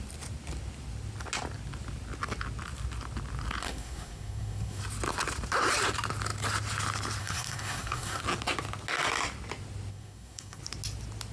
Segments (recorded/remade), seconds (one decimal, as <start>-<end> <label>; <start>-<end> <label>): 0.0-3.6 recorded; 3.6-4.8 remade; 4.8-7.2 recorded; 7.2-8.2 remade; 8.2-9.9 recorded; 9.9-10.6 remade; 10.6-11.3 recorded